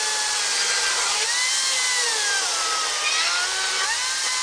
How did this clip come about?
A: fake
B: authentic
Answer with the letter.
B